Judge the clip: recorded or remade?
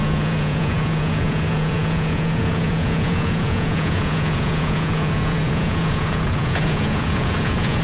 remade